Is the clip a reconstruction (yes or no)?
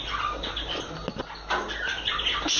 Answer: no